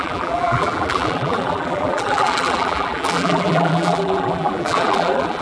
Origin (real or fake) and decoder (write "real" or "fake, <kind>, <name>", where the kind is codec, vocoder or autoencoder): fake, vocoder, BigVGAN v2